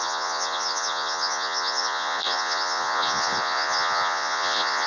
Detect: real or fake fake